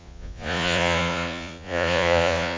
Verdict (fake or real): fake